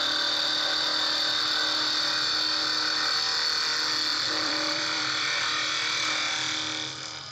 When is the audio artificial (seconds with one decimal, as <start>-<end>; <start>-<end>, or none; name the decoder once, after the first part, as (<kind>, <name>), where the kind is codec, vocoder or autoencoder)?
4.1-5.4 (vocoder, BigVGAN v2)